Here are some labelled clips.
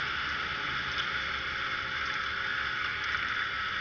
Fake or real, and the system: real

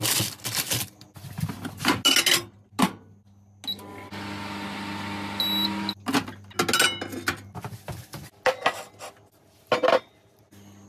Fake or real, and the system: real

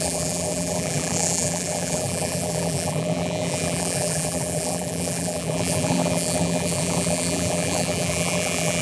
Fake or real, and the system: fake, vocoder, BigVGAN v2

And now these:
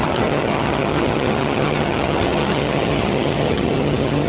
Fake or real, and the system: fake, vocoder, HiFi-GAN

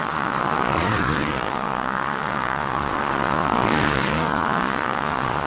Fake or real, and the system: fake, vocoder, Vocos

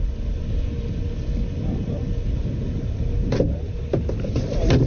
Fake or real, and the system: real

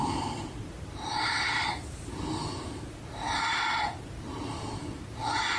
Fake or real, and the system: real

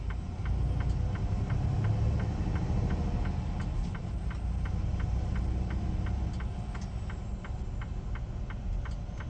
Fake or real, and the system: real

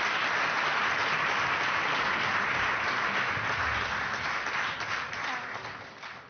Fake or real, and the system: real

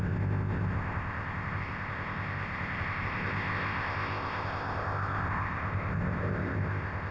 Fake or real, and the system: fake, codec, ZipCodec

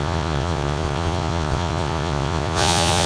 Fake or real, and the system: fake, vocoder, Vocos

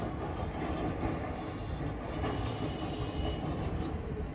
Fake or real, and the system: real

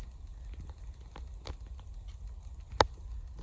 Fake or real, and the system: real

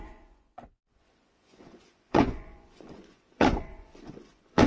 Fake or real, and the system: fake, vocoder, Vocos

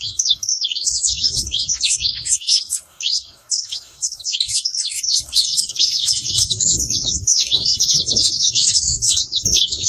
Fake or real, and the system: fake, codec, DAC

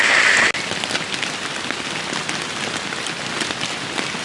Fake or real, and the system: real